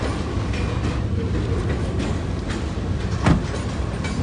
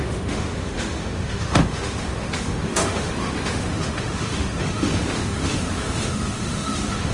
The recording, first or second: first